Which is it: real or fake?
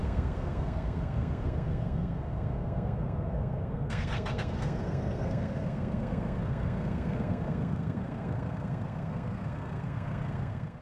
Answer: fake